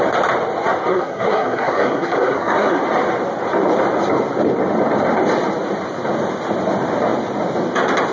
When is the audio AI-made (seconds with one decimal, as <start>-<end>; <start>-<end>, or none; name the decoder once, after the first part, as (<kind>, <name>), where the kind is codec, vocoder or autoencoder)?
0.9-2.8 (codec, SNAC)